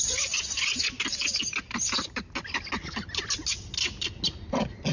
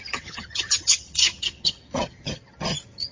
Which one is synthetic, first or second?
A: second